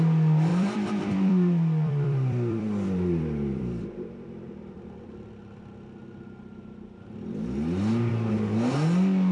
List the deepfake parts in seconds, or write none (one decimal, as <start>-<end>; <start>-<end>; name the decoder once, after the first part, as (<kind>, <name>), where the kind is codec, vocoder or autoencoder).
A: 0.5-5.3 (vocoder, BigVGAN v2)